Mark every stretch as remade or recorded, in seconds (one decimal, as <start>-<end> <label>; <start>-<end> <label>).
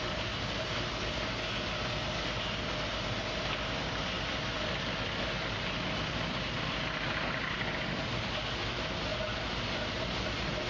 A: 0.0-10.7 recorded